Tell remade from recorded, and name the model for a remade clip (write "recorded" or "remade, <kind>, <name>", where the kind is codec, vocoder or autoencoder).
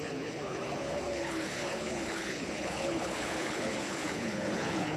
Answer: remade, codec, HILCodec